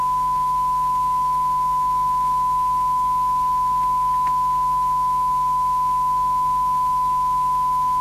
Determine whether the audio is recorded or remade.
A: remade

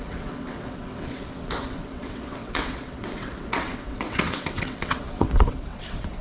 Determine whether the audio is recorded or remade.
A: remade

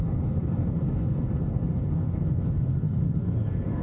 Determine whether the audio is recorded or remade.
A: remade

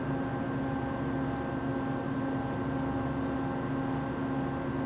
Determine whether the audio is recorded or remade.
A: recorded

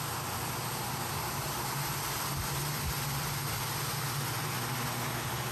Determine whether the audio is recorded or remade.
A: recorded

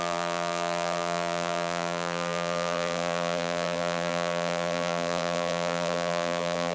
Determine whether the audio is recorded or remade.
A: remade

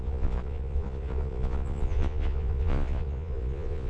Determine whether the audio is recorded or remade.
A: remade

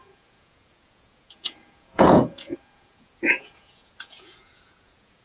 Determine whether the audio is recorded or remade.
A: remade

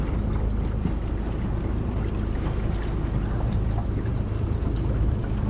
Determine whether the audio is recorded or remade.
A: recorded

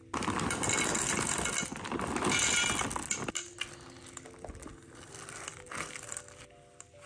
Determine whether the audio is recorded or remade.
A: recorded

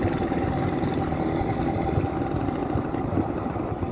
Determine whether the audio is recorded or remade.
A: recorded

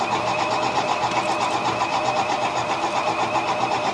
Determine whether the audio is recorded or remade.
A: recorded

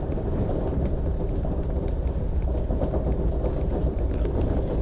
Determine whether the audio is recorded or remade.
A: recorded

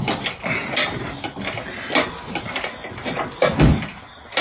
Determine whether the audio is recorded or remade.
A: recorded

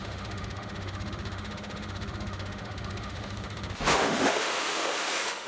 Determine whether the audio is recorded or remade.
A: remade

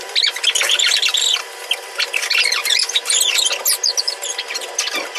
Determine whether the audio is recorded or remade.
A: recorded